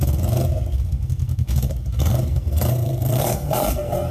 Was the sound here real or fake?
fake